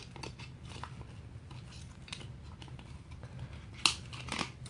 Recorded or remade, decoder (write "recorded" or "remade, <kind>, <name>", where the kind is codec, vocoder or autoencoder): recorded